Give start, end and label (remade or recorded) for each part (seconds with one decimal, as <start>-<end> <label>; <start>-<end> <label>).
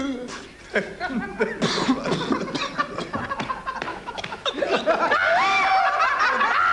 0.0-3.9 recorded; 3.9-4.6 remade; 4.6-6.7 recorded